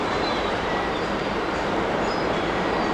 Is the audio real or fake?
fake